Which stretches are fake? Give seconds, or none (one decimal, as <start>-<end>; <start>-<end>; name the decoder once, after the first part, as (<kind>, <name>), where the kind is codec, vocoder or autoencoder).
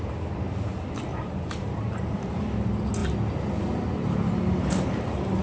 1.1-2.4 (vocoder, BigVGAN v2)